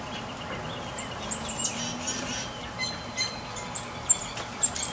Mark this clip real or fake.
real